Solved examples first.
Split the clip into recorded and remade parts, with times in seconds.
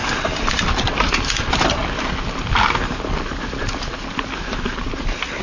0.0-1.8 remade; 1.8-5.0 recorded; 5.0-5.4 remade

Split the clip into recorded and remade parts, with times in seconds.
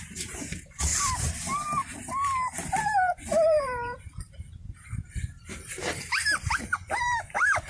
0.0-0.9 remade; 0.9-3.2 recorded; 3.2-7.7 remade